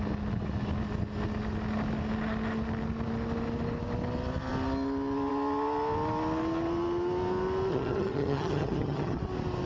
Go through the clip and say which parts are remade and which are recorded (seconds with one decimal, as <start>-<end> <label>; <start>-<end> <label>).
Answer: 0.0-7.7 recorded; 7.7-9.2 remade; 9.2-9.7 recorded